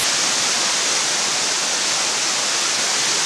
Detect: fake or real real